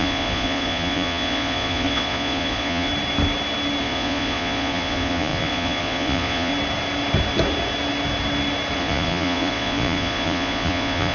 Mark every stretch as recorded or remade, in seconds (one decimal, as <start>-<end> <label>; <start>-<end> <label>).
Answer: 0.0-2.9 remade; 2.9-3.8 recorded; 3.8-6.5 remade; 6.5-8.8 recorded; 8.8-11.1 remade